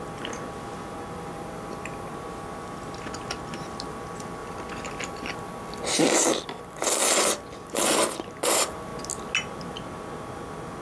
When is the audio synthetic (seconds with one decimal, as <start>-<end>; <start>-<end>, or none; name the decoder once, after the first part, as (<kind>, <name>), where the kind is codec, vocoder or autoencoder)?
none